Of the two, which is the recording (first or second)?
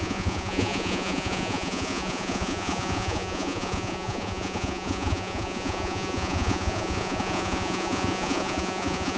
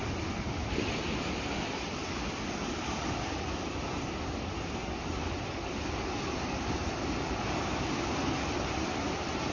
second